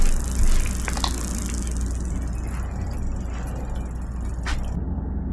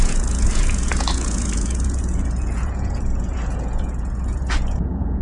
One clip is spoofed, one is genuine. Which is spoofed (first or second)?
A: second